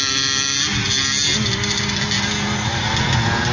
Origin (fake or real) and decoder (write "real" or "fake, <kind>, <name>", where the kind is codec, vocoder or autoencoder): real